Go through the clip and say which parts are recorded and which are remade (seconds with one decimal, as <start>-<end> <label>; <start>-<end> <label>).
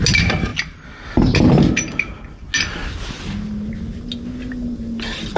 0.0-5.4 recorded